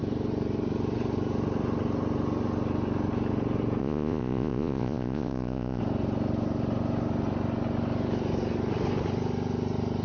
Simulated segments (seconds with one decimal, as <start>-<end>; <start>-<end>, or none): 3.8-5.8